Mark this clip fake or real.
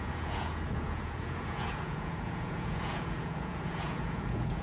fake